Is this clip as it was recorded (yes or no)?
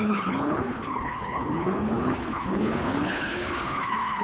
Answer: no